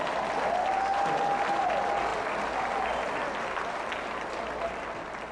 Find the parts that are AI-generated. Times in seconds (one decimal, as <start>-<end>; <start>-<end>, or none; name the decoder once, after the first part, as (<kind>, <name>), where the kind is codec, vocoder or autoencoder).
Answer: none